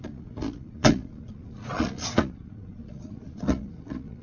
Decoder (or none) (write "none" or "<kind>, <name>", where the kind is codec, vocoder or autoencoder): vocoder, Vocos